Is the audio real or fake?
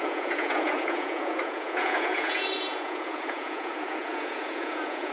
fake